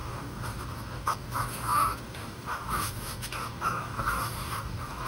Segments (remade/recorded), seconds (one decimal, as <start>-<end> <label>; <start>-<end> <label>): 0.0-5.1 remade